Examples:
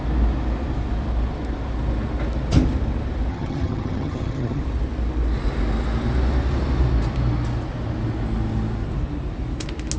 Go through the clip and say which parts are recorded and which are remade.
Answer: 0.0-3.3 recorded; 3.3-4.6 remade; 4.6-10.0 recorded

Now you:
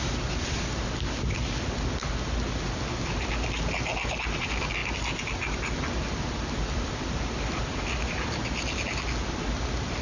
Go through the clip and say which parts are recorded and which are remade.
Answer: 0.0-10.0 recorded

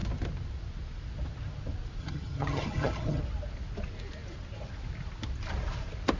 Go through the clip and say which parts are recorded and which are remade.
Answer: 0.0-2.0 recorded; 2.0-3.2 remade; 3.2-6.2 recorded